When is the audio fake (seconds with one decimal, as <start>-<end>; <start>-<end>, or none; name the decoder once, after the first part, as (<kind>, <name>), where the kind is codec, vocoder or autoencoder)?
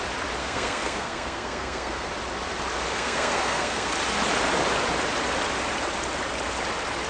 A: 0.4-2.1 (codec, SNAC); 2.9-3.9